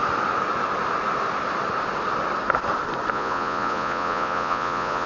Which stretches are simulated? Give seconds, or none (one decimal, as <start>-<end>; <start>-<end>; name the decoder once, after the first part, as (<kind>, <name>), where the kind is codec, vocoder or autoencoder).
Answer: 3.1-5.1 (vocoder, Vocos)